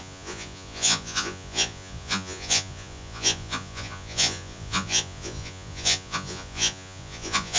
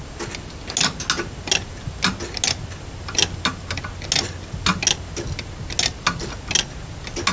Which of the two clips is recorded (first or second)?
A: second